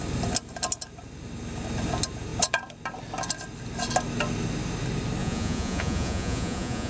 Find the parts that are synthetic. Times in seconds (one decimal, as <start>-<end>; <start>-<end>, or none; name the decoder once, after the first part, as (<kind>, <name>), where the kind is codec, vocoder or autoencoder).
5.2-6.9 (vocoder, Vocos)